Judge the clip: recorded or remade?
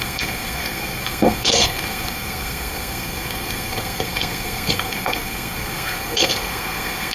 remade